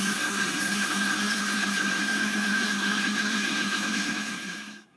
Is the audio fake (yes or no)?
yes